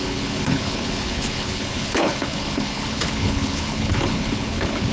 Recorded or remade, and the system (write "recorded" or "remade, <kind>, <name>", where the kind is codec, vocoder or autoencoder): remade, codec, HILCodec